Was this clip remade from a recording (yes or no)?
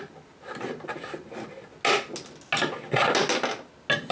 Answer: no